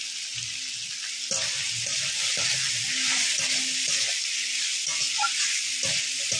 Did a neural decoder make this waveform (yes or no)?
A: no